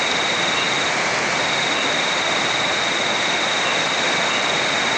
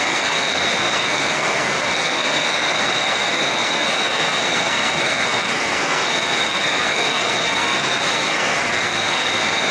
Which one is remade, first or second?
second